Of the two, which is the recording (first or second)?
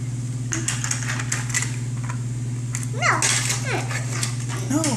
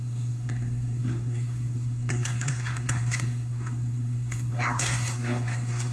first